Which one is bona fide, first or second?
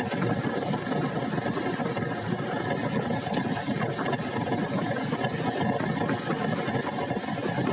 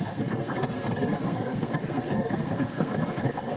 first